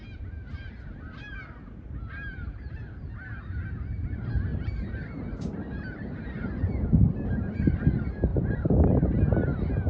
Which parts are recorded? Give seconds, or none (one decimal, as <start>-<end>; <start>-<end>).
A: 0.0-4.5; 7.5-8.3; 9.2-9.9